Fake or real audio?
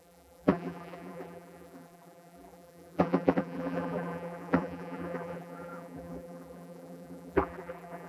fake